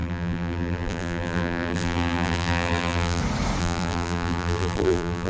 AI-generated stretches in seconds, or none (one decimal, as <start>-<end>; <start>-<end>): 0.0-3.2; 3.6-5.3